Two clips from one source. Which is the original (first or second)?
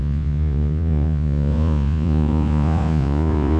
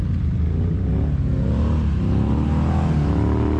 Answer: second